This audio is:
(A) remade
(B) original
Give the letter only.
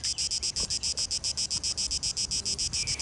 B